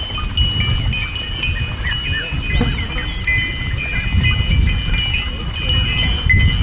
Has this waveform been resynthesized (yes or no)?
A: no